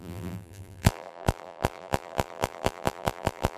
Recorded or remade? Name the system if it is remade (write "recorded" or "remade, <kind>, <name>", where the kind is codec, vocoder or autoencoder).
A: remade, vocoder, BigVGAN v2